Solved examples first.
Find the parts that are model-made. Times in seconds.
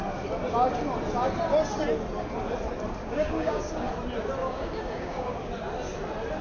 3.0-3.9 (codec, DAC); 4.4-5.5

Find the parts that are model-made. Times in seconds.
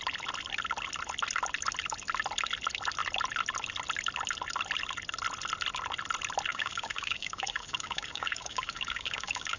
6.5-9.6 (codec, DAC)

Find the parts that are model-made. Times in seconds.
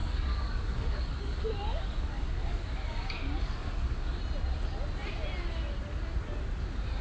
0.0-4.2 (codec, DAC)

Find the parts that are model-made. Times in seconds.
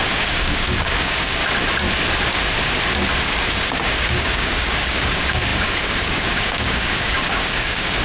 0.0-1.4 (codec, DAC); 3.5-8.0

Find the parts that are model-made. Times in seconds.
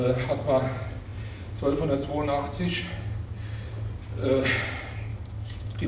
5.1-5.9 (codec, DAC)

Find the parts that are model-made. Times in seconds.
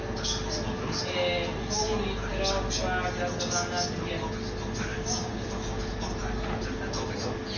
4.9-5.5 (codec, DAC)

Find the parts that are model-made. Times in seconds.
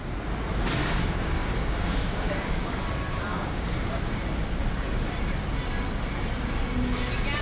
0.8-2.8 (codec, DAC); 3.3-4.0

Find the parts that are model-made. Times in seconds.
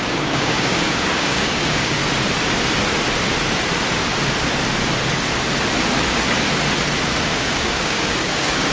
0.0-2.0 (codec, DAC); 7.2-8.7